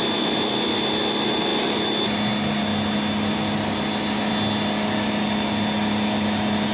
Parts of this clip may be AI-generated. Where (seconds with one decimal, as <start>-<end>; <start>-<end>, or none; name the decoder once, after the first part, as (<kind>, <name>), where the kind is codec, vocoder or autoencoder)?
none

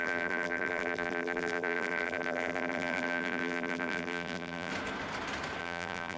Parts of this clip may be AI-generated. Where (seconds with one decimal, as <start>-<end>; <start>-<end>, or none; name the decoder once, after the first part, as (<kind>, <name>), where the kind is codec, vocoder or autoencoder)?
0.0-4.7 (vocoder, BigVGAN v2); 5.6-6.2

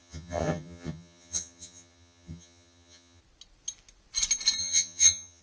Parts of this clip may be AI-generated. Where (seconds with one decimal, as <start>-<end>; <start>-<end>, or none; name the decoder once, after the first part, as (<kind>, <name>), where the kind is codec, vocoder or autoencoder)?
0.0-3.2 (vocoder, HiFi-GAN); 4.6-5.4

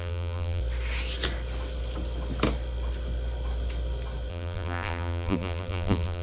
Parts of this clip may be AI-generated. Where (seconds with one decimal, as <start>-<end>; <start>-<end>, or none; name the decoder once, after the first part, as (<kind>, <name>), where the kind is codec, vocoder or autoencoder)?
0.0-0.6 (vocoder, BigVGAN v2); 4.3-6.2

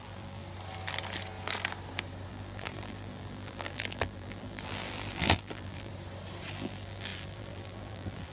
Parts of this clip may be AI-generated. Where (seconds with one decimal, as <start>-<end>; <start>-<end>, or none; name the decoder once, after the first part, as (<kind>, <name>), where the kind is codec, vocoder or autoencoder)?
0.0-0.4 (vocoder, BigVGAN v2); 2.3-5.9; 6.5-8.3

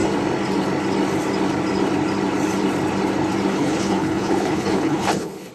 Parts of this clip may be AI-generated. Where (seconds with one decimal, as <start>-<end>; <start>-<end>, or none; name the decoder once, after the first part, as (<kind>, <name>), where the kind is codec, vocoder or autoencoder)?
3.5-5.5 (codec, HILCodec)